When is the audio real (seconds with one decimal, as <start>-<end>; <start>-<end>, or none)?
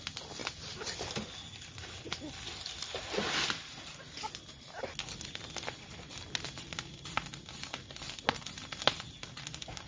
0.0-9.9